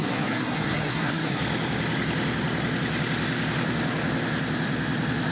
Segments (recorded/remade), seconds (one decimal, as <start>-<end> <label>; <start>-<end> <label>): 0.0-1.4 remade; 1.4-5.3 recorded

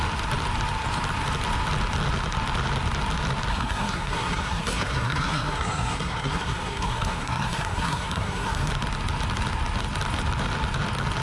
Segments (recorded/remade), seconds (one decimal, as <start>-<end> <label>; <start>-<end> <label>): 0.0-3.5 recorded; 3.5-8.7 remade; 8.7-11.2 recorded